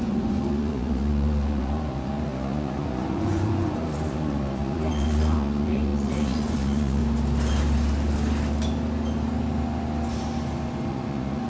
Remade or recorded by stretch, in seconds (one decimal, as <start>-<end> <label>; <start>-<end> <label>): 0.0-7.0 remade; 7.0-10.9 recorded; 10.9-11.5 remade